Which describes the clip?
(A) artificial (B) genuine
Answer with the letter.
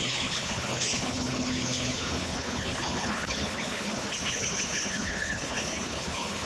A